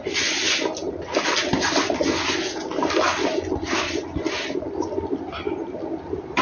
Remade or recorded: recorded